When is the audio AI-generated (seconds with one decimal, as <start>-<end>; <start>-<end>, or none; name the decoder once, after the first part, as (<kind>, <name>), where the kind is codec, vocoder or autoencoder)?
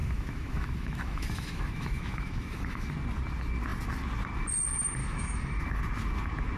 0.0-2.9 (autoencoder, DAC-VAE); 5.0-5.8